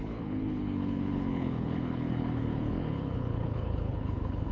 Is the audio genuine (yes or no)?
no